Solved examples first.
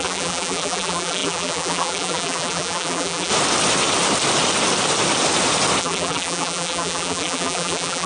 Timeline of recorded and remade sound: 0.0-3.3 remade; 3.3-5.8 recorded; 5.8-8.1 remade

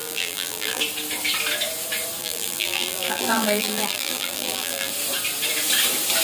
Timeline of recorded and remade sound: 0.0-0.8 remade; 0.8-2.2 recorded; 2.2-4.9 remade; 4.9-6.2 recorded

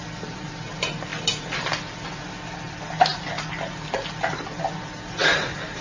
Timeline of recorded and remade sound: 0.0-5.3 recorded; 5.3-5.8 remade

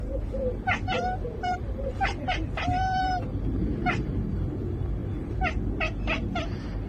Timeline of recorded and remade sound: 0.0-0.9 recorded; 0.9-3.4 remade; 3.4-5.0 recorded; 5.0-5.8 remade; 5.8-6.9 recorded

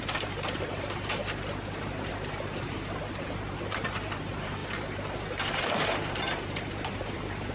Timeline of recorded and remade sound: 0.0-1.2 remade; 1.2-2.1 recorded; 2.1-4.6 remade; 4.6-5.2 recorded; 5.2-7.5 remade

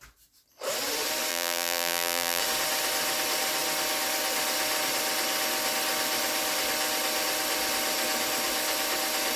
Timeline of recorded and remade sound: 0.0-1.3 recorded; 1.3-2.4 remade; 2.4-9.4 recorded

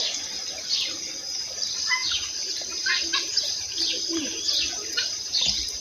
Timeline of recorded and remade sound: 0.0-5.8 remade

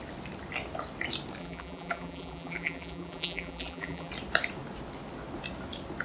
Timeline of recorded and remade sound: 0.0-1.4 recorded; 1.4-4.1 remade; 4.1-6.0 recorded